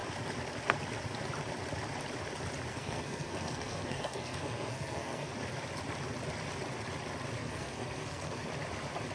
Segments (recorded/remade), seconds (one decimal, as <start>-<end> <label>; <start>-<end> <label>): 0.0-2.7 recorded; 2.7-5.3 remade; 5.3-7.4 recorded; 7.4-8.5 remade; 8.5-9.1 recorded